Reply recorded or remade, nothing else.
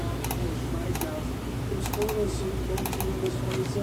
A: recorded